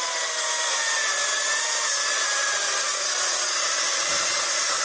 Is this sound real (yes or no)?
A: no